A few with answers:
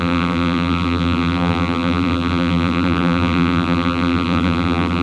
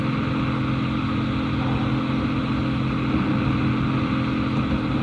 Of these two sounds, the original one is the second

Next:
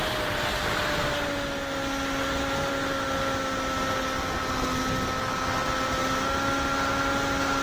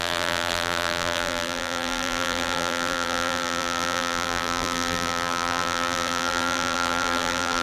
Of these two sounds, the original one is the first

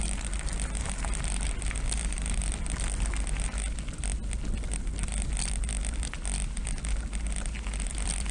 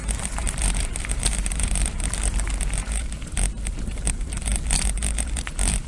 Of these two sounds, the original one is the first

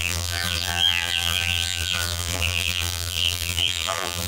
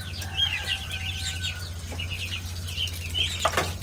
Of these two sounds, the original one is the second